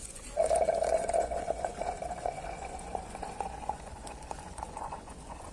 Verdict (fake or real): fake